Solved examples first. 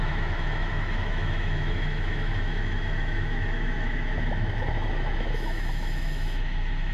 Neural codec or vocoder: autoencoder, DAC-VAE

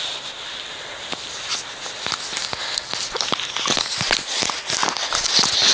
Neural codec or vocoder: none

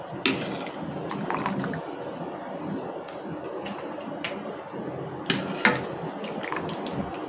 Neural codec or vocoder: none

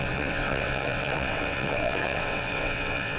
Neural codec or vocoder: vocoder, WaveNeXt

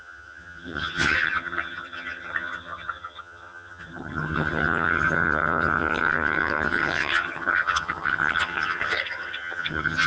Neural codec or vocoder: vocoder, HiFi-GAN